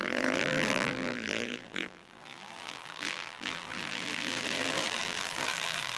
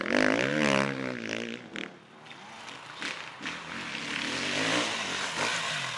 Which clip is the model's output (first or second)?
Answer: first